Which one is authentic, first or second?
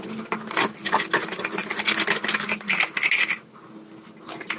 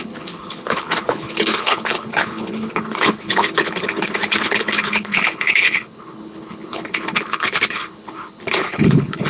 first